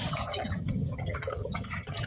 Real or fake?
fake